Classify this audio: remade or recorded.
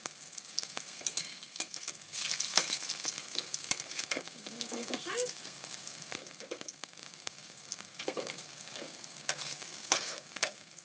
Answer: remade